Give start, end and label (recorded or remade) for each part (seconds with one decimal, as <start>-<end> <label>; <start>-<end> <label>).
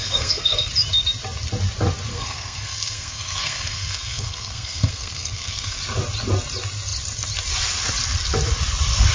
0.0-0.7 remade; 0.7-2.1 recorded; 2.1-5.8 remade; 5.8-9.1 recorded